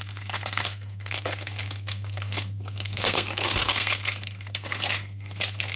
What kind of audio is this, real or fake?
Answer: fake